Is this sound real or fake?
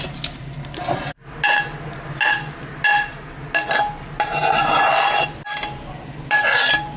real